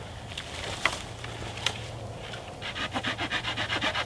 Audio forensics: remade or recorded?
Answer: recorded